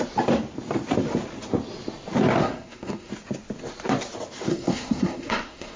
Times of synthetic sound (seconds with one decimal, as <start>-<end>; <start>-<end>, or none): 2.4-3.1; 4.5-5.8